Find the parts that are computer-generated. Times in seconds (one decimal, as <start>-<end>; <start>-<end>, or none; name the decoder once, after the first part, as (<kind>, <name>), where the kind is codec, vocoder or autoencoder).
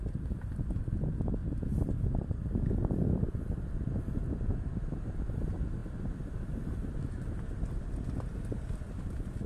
none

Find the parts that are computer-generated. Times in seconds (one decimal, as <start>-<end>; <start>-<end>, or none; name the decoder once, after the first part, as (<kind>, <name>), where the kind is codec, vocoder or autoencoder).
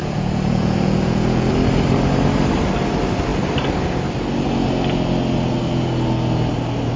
0.0-1.5 (vocoder, Vocos)